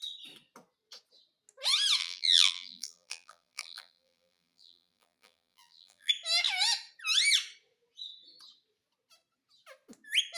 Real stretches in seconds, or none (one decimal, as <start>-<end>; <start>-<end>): 0.0-2.0; 6.1-10.4